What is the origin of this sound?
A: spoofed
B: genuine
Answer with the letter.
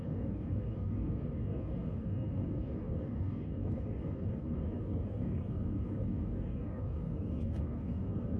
A